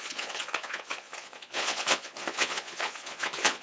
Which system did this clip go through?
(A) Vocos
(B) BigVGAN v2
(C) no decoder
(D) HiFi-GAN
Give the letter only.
A